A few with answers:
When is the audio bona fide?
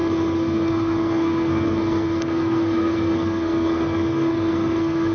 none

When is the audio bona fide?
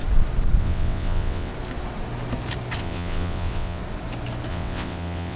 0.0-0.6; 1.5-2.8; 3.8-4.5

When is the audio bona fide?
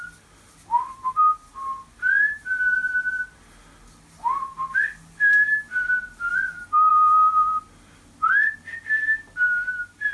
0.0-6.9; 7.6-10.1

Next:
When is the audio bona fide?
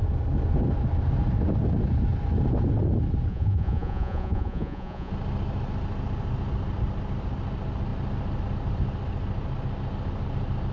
0.0-3.3; 5.1-10.7